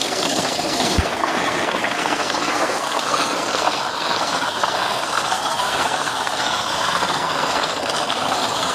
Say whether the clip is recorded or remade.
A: remade